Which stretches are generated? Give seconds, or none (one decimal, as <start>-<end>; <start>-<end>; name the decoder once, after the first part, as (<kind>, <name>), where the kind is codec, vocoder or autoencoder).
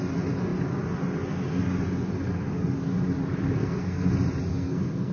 3.6-4.1 (codec, SNAC); 4.5-5.1